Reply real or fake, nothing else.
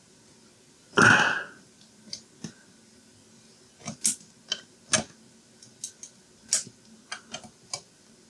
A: real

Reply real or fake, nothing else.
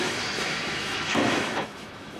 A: fake